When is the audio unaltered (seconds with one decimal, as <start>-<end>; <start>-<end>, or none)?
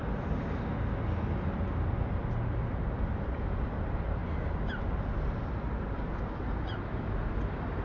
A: 0.0-7.8